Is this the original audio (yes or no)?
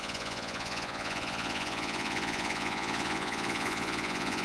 no